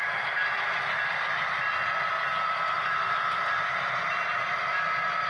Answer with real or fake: real